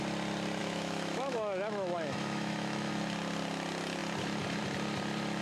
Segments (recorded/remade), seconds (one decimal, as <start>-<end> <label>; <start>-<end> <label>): 0.0-0.6 recorded; 0.6-2.9 remade; 2.9-5.4 recorded